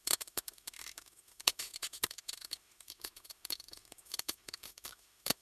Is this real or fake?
fake